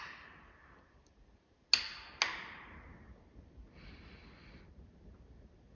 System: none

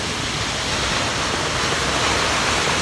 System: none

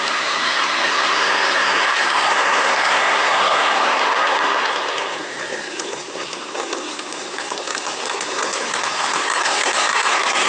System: codec, SNAC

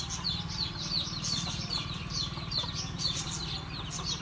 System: none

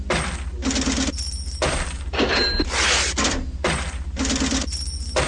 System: none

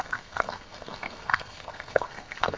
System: codec, SNAC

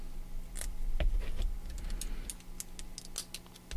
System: none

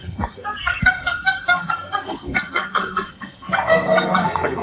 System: codec, SNAC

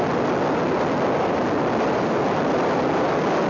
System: none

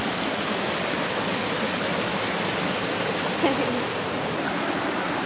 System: none